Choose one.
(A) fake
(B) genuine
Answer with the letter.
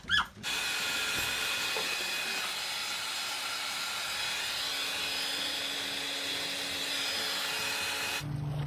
B